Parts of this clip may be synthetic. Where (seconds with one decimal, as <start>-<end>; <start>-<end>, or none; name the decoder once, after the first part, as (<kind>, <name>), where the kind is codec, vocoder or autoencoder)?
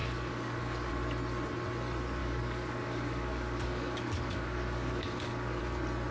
0.0-0.9 (codec, DAC); 2.2-5.6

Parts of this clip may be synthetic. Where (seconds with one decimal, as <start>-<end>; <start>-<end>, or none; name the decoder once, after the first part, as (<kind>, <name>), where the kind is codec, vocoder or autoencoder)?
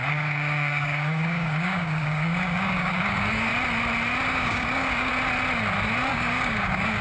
0.0-3.5 (codec, DAC); 4.3-5.1; 6.1-7.0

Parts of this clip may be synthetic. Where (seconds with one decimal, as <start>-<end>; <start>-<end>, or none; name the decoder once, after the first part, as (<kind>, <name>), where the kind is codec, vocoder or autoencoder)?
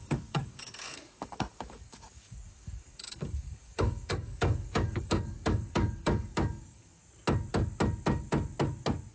0.0-7.0 (codec, DAC)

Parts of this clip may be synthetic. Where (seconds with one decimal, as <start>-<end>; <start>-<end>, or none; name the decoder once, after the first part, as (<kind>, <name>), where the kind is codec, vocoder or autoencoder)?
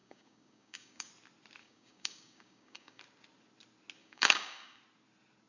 0.0-1.1 (codec, DAC); 1.6-3.0; 4.0-4.8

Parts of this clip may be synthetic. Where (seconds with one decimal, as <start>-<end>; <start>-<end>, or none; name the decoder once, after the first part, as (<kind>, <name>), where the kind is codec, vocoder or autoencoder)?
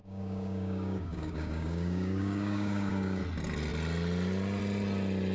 0.0-3.2 (codec, DAC)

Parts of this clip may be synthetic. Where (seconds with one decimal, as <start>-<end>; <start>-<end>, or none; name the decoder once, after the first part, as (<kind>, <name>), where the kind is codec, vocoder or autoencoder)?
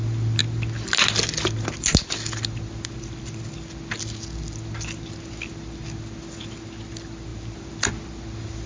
none